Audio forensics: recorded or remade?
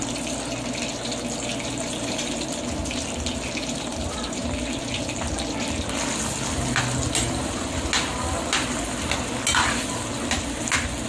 recorded